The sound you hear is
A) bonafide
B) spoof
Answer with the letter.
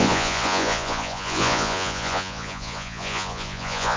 B